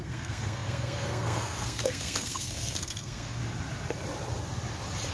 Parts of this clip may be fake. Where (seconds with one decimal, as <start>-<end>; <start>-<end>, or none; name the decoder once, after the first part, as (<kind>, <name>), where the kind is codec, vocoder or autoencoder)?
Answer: 0.0-3.4 (codec, SNAC)